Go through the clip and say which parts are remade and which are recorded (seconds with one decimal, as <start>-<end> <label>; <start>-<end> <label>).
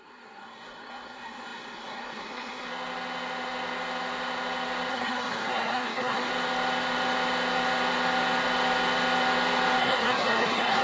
0.0-2.7 remade; 2.7-4.9 recorded; 4.9-6.3 remade; 6.3-9.8 recorded; 9.8-10.8 remade